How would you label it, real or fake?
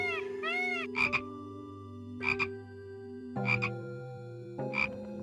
fake